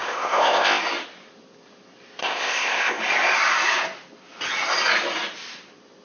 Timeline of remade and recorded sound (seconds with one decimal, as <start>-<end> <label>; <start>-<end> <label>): 0.0-0.8 remade; 0.8-2.2 recorded; 2.2-3.0 remade; 3.0-6.0 recorded